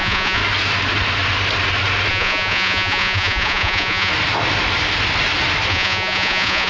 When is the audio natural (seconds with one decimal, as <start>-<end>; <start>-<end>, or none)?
0.4-2.1; 4.1-5.7